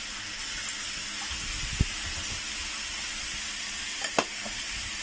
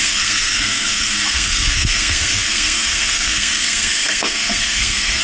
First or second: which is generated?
second